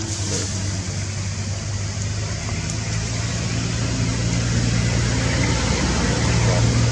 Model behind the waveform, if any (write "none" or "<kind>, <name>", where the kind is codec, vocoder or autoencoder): none